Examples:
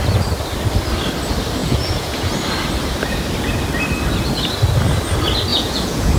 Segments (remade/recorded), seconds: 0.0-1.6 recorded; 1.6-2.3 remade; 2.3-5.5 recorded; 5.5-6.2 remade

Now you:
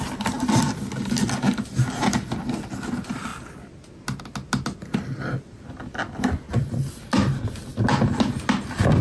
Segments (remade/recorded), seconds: 0.0-9.0 recorded

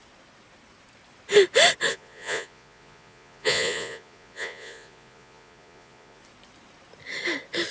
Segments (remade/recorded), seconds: 0.0-1.9 recorded; 1.9-6.2 remade; 6.2-7.7 recorded